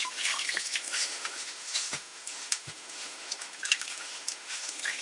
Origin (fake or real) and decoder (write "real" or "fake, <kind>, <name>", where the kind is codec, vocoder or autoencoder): fake, autoencoder, DAC-VAE